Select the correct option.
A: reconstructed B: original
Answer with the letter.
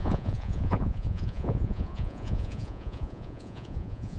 A